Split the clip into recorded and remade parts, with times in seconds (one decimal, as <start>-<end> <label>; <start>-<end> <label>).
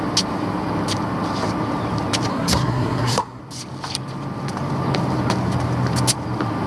0.0-2.3 recorded; 2.3-3.4 remade; 3.4-6.7 recorded